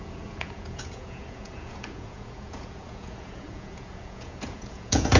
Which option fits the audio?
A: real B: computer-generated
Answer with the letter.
B